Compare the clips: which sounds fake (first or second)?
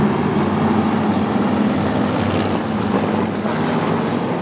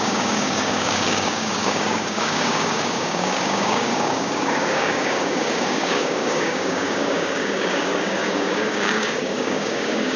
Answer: second